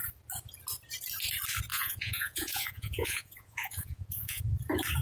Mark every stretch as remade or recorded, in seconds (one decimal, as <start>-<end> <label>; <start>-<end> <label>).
0.0-1.7 recorded; 1.7-4.4 remade; 4.4-5.0 recorded